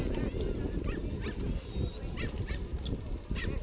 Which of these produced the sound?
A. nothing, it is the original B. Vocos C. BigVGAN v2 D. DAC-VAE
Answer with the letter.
A